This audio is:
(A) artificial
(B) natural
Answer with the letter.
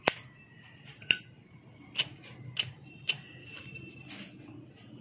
B